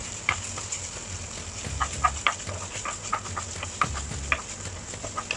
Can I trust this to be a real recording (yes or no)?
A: yes